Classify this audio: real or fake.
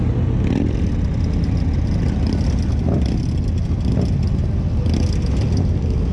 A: real